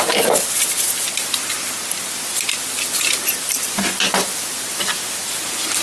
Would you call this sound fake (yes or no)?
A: no